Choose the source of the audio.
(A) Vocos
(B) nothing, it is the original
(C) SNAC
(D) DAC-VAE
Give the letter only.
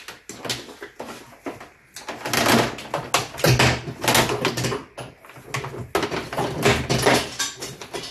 B